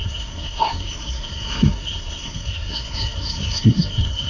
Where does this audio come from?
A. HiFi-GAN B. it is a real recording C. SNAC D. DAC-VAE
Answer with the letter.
C